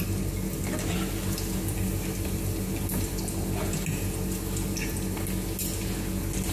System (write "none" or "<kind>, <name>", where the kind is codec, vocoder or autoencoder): none